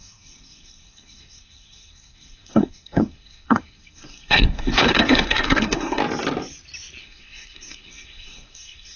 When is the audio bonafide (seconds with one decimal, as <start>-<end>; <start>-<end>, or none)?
6.0-7.0

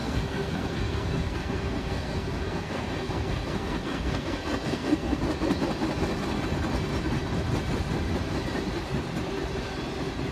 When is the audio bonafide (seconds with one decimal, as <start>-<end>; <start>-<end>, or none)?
5.2-10.3

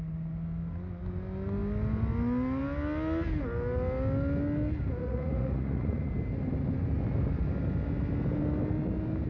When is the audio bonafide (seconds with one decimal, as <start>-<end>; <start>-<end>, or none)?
0.0-5.0; 6.1-9.3

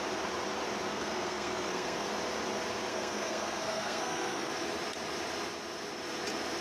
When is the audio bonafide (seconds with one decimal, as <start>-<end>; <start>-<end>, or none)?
0.0-0.9; 2.1-2.9; 4.5-6.6